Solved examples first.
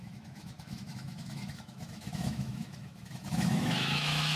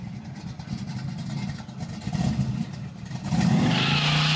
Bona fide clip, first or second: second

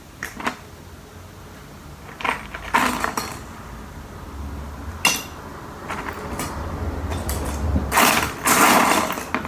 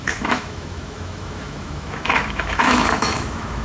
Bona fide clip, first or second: first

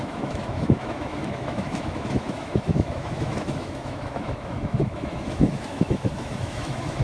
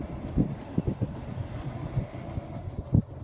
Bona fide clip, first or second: second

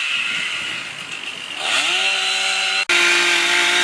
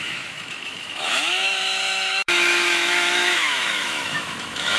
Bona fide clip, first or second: first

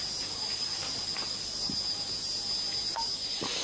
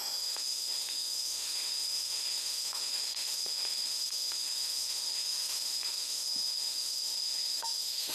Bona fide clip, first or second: first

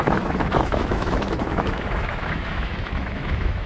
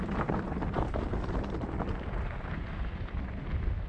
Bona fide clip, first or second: second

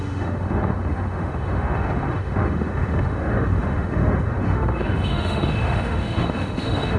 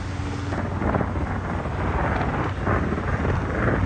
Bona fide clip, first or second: second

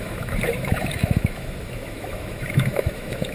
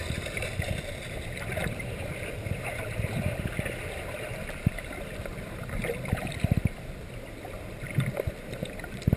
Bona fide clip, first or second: second